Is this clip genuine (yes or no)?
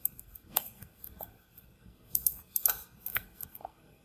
no